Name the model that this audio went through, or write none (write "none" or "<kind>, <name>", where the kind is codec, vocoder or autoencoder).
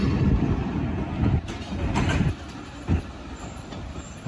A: none